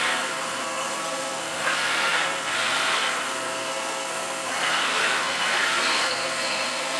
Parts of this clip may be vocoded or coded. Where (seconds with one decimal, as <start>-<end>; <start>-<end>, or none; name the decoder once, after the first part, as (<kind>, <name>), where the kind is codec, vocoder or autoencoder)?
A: 0.0-7.0 (codec, SNAC)